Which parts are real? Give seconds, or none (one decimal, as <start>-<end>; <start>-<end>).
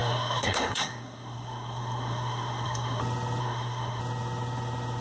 3.0-3.4; 4.0-5.0